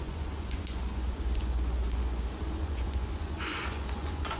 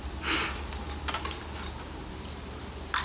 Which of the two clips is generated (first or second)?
first